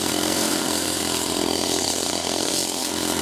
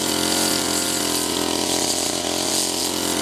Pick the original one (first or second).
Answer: second